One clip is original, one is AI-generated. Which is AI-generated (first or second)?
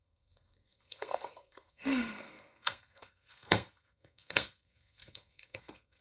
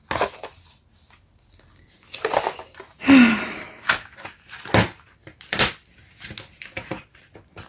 first